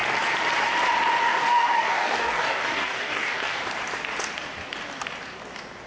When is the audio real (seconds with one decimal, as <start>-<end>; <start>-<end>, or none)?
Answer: 0.0-1.2; 3.6-5.9